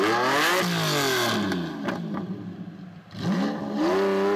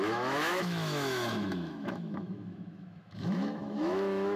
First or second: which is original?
first